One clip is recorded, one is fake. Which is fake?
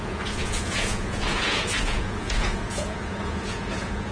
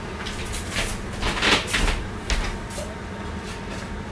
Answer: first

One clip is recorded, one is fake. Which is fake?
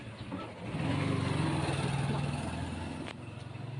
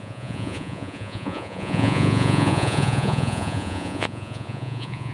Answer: second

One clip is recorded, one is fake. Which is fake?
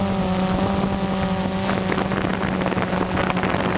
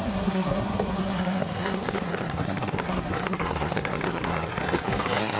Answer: second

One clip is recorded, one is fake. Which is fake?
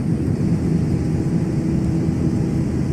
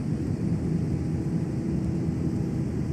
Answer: second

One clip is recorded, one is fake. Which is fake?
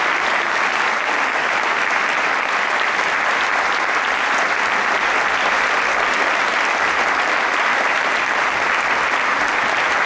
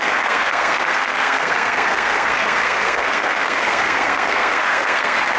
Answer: second